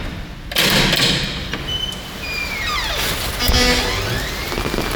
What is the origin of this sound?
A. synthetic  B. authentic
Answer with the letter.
B